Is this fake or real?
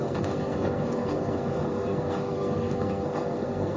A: fake